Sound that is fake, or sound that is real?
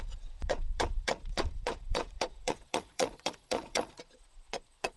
fake